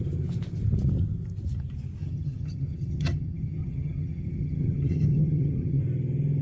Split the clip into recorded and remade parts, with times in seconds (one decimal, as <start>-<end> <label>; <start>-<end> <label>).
0.0-2.0 recorded; 2.0-5.8 remade; 5.8-6.4 recorded